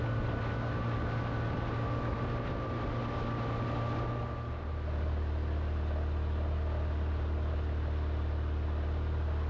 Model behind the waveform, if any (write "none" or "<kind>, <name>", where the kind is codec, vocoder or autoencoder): none